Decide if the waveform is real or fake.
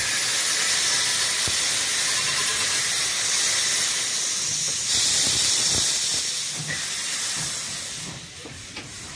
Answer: real